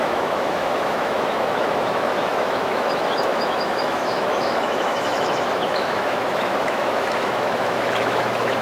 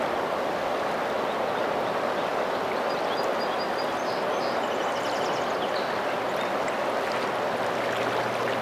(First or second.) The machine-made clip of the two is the first